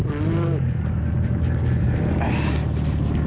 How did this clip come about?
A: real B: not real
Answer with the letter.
A